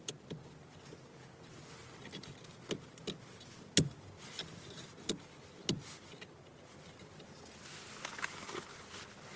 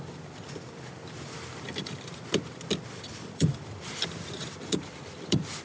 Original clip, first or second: first